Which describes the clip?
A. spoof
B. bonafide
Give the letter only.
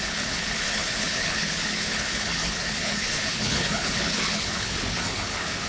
A